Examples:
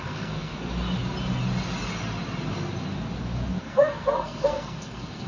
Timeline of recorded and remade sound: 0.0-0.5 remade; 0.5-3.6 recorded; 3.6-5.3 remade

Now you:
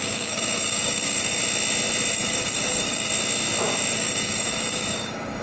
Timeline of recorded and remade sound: 0.0-1.4 remade; 1.4-2.1 recorded; 2.1-3.1 remade; 3.1-3.9 recorded; 3.9-5.4 remade

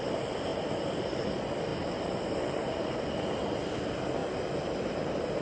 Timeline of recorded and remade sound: 0.0-0.5 recorded; 0.5-1.2 remade; 1.2-1.7 recorded; 1.7-3.1 remade; 3.1-5.4 recorded

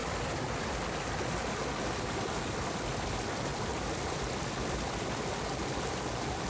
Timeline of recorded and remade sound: 0.0-6.5 recorded

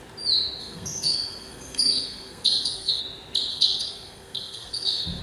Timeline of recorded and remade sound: 0.0-0.6 recorded; 0.6-3.0 remade; 3.0-3.5 recorded; 3.5-5.2 remade

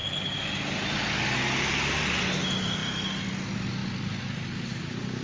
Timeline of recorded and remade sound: 0.0-5.2 recorded